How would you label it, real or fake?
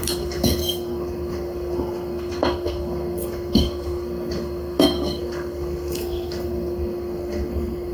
fake